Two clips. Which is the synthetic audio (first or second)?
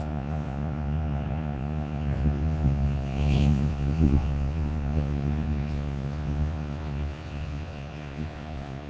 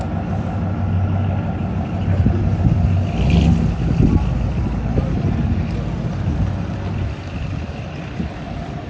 first